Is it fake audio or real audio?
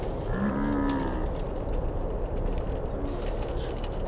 real